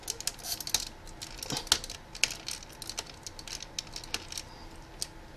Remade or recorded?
recorded